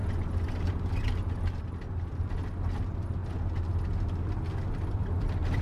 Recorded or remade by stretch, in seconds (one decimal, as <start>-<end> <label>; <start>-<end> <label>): 0.0-5.6 recorded